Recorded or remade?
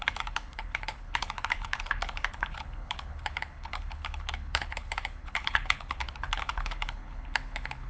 remade